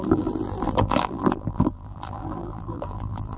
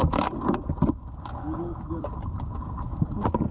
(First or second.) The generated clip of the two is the first